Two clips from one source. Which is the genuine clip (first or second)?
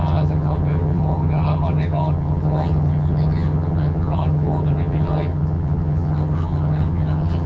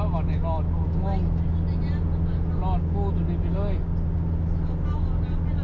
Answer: second